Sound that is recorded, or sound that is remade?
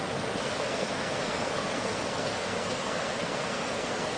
remade